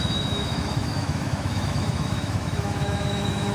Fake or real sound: fake